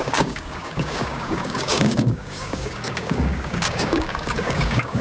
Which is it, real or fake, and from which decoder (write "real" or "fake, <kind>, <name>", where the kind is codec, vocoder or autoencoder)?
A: fake, codec, DAC